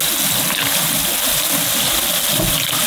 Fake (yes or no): no